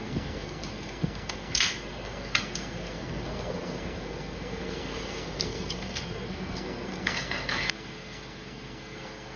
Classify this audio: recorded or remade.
remade